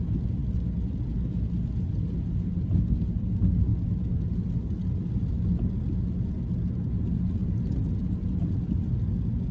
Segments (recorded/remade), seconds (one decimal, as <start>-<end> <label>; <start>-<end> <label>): 0.0-9.5 recorded